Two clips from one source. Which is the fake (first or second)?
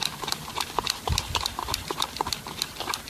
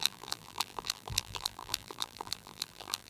second